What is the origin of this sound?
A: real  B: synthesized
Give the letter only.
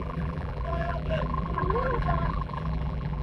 B